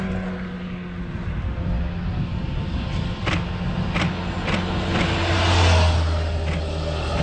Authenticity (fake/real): real